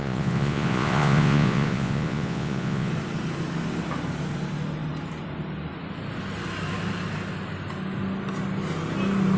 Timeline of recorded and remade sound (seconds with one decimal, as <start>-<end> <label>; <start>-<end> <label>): 0.0-2.9 remade; 2.9-9.4 recorded